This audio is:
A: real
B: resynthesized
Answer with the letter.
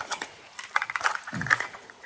B